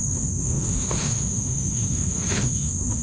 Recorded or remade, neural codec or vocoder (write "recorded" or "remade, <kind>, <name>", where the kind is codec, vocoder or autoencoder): remade, autoencoder, DAC-VAE